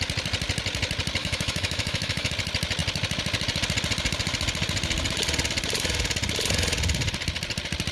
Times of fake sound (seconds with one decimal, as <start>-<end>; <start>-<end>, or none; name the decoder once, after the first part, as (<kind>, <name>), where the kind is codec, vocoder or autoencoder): 1.2-2.3 (autoencoder, DAC-VAE)